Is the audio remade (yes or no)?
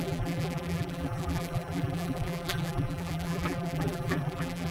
yes